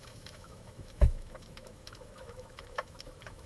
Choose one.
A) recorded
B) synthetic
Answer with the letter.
B